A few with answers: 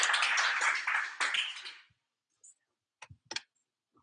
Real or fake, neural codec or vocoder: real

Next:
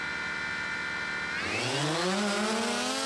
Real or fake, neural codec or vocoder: real